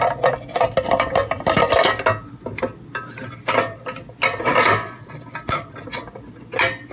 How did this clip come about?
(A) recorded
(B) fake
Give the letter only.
A